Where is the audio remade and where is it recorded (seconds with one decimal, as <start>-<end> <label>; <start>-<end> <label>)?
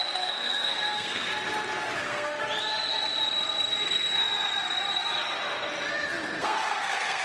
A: 0.0-1.3 remade; 1.3-2.0 recorded; 2.0-2.4 remade; 2.4-6.4 recorded; 6.4-7.2 remade